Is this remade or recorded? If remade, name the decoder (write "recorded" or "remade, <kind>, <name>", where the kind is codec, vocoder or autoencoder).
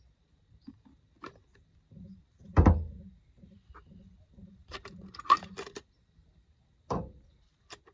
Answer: recorded